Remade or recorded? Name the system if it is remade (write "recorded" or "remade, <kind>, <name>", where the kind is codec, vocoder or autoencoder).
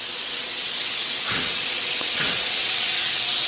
remade, vocoder, WaveNeXt